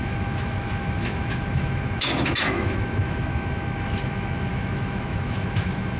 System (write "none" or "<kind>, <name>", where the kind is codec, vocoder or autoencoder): autoencoder, DAC-VAE